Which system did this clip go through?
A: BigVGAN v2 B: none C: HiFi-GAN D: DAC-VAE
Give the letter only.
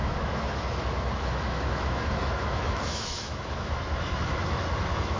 D